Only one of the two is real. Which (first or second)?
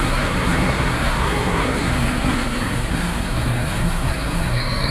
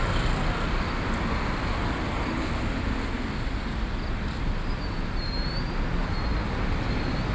second